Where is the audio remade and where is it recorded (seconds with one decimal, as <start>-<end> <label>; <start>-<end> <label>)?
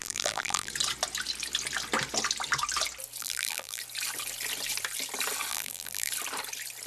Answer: 0.0-0.7 remade; 0.7-3.2 recorded; 3.2-3.8 remade; 3.8-5.5 recorded; 5.5-6.1 remade; 6.1-6.9 recorded